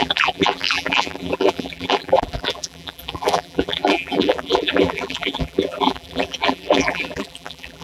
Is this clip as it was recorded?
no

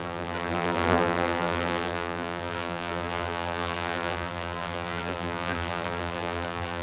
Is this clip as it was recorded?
no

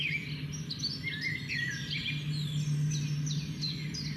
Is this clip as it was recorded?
yes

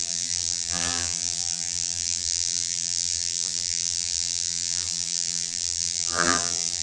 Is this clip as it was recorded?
no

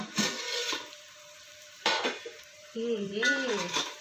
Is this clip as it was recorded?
no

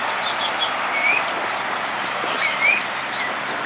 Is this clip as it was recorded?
no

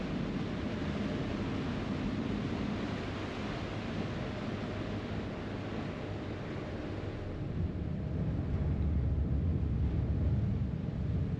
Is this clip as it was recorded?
yes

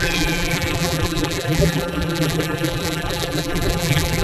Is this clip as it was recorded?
no